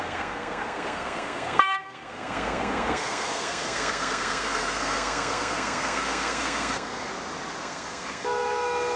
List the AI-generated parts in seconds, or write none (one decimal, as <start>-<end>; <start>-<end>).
0.0-7.1; 7.6-9.0

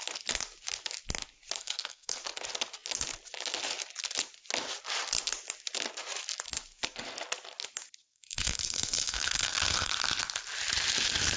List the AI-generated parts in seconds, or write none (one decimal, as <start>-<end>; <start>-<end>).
1.6-2.2; 8.1-9.9